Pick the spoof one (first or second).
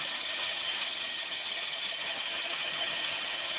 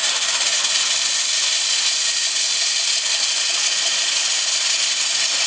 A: first